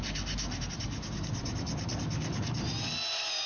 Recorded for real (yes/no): yes